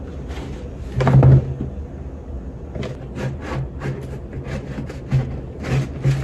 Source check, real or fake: real